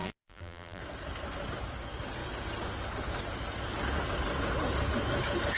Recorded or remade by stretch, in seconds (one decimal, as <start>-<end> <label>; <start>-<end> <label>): 0.0-0.8 remade; 0.8-5.6 recorded